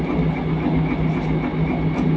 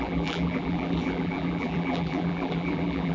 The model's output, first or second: second